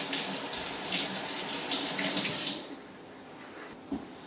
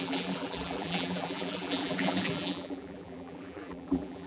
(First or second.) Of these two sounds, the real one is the first